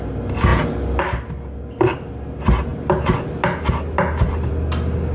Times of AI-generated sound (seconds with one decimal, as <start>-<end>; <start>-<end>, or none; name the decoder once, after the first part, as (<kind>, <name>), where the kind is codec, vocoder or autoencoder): none